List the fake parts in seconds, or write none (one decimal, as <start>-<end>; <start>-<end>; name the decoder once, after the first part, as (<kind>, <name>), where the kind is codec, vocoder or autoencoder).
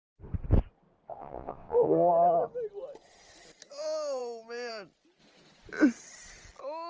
1.1-2.1 (vocoder, WaveNeXt)